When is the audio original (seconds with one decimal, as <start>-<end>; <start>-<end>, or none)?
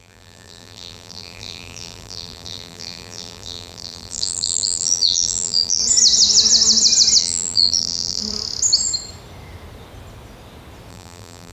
5.8-7.2; 8.2-10.9